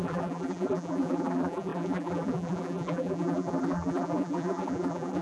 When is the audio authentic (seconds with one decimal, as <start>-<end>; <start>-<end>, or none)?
none